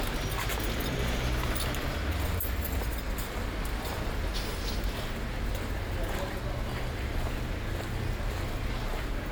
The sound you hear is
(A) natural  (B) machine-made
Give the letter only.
A